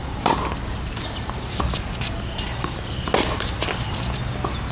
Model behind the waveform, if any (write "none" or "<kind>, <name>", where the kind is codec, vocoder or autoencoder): none